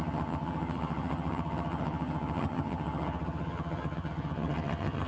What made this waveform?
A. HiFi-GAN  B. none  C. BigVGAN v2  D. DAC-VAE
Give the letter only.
A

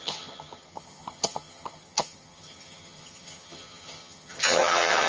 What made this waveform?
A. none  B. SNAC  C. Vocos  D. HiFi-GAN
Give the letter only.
D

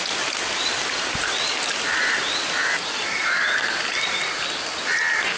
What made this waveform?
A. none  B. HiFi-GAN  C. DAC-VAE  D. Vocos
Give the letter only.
A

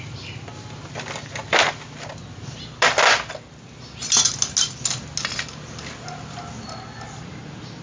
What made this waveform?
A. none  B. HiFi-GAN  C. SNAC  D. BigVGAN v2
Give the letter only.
A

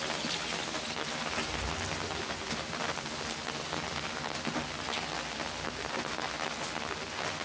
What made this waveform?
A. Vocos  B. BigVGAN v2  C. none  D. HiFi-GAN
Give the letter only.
C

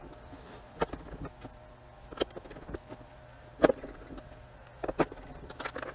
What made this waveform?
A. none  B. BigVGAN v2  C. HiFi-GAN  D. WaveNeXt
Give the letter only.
A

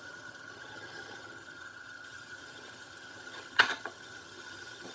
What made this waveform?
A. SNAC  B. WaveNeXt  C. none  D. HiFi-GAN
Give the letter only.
D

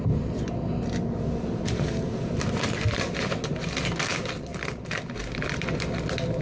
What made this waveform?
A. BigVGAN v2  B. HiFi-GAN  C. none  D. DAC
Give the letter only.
C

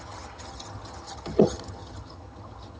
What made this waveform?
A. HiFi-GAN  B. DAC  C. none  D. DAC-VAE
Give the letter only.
A